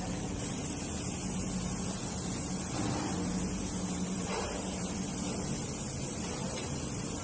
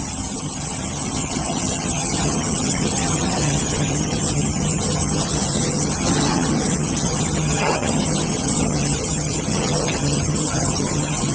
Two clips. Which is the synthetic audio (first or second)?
second